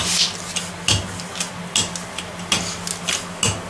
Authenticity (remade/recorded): recorded